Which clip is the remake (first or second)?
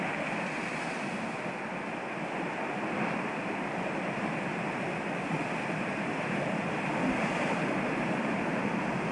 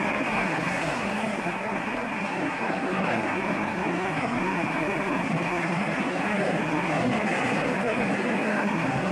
second